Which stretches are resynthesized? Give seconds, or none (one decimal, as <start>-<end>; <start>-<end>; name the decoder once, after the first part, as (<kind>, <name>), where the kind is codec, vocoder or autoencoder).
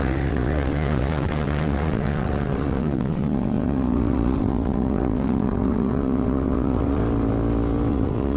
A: 0.0-7.0 (vocoder, WaveNeXt); 7.9-8.4